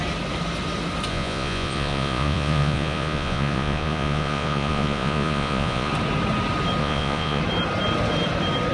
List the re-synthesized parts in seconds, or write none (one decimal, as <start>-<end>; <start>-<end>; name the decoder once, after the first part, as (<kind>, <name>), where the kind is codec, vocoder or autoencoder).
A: 1.1-5.9 (vocoder, Vocos); 6.8-7.4